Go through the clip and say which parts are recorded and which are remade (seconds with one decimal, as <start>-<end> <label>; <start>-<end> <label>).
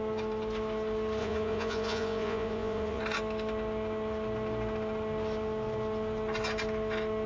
0.0-1.2 recorded; 1.2-3.0 remade; 3.0-7.3 recorded